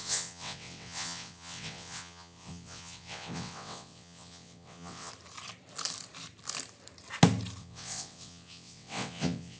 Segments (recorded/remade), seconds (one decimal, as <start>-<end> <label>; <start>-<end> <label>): 0.0-5.1 remade; 5.1-7.6 recorded; 7.6-9.6 remade